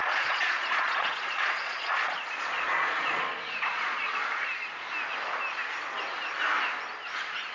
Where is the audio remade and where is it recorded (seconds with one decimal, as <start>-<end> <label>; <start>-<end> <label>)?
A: 0.0-4.5 remade; 4.5-7.5 recorded